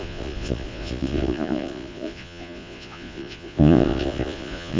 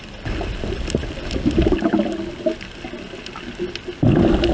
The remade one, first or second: first